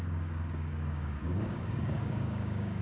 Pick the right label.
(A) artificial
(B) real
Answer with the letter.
A